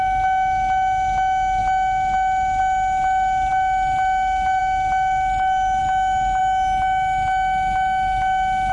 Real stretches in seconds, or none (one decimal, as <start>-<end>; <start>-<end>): 0.0-8.7